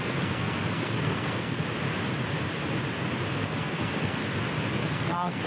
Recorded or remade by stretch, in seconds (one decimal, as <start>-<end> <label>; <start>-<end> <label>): 0.0-1.6 remade; 1.6-3.3 recorded; 3.3-4.2 remade; 4.2-4.8 recorded; 4.8-5.5 remade